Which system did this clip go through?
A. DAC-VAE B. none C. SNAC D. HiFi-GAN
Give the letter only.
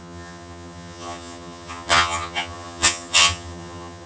D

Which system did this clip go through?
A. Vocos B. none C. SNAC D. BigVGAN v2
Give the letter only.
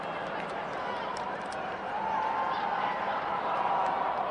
D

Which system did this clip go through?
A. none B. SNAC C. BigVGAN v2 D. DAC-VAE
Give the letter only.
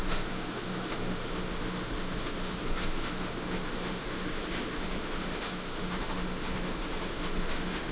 D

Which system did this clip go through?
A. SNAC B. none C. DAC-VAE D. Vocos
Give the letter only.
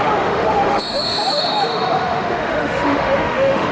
C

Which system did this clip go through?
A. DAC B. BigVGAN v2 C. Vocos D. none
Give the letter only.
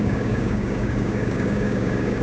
A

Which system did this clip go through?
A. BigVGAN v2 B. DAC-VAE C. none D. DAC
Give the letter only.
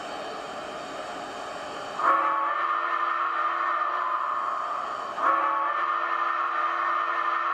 C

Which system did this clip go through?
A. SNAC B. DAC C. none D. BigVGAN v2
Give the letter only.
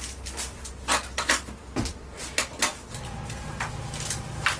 C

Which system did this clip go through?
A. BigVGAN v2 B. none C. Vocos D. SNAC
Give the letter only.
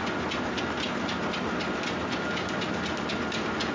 B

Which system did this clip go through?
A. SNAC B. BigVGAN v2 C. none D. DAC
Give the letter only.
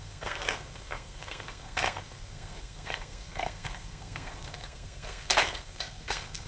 A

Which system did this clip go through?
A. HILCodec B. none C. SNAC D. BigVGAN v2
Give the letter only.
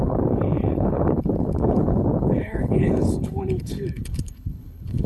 A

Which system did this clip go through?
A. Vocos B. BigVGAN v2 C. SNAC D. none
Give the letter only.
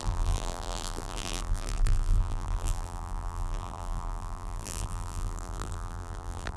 B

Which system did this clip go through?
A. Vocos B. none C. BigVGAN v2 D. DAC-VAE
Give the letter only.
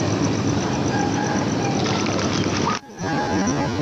B